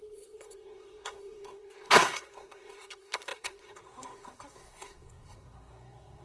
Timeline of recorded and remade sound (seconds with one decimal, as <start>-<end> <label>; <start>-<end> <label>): 0.0-6.2 remade